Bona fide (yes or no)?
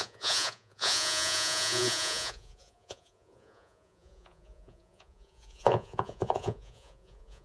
no